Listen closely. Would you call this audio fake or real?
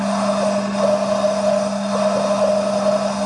real